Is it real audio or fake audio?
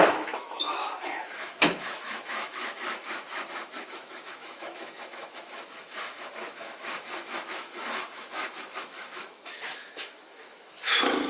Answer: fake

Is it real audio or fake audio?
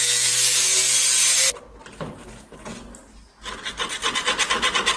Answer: real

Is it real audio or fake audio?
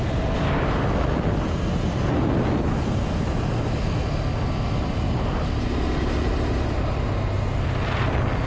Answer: real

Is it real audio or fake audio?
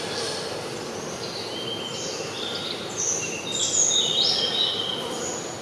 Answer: real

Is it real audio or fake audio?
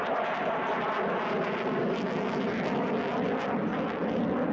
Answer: real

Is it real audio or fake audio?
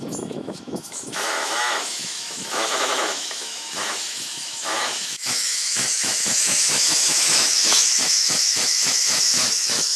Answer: fake